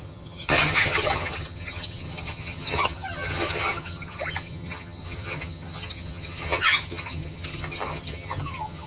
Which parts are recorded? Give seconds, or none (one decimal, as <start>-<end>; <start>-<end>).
none